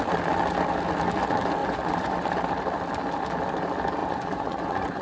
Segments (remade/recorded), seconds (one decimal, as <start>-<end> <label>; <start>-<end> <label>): 0.0-1.6 recorded; 1.6-2.3 remade; 2.3-4.0 recorded; 4.0-5.0 remade